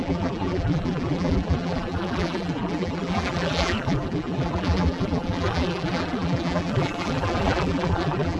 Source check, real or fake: fake